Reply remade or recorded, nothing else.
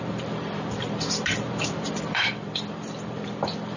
remade